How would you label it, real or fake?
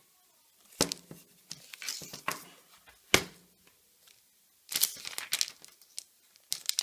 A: real